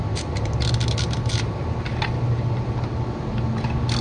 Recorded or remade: recorded